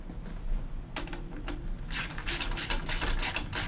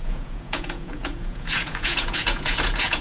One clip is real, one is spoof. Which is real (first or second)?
first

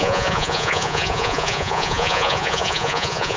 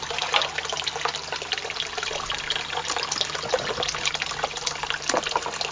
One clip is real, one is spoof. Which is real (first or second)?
second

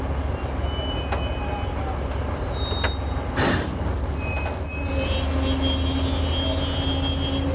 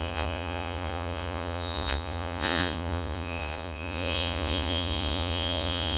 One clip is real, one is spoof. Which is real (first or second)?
first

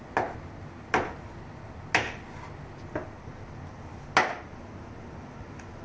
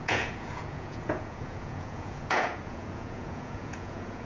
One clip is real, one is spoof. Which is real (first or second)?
first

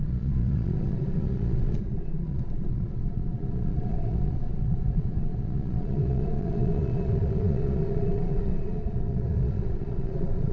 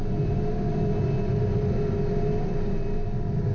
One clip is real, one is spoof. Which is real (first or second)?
second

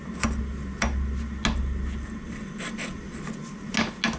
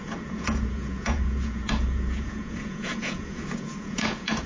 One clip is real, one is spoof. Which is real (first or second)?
first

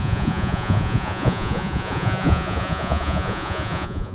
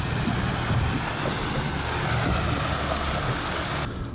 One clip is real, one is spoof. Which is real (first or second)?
second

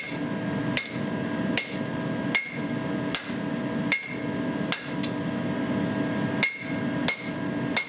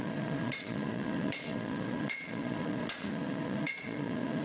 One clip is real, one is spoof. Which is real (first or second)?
first